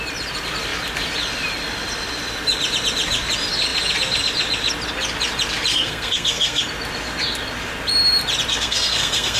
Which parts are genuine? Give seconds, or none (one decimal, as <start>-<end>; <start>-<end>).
0.0-5.7; 6.6-8.5